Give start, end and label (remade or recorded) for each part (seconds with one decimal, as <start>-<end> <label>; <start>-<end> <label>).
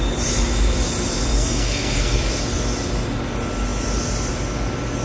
0.0-1.3 recorded; 1.3-2.2 remade; 2.2-5.0 recorded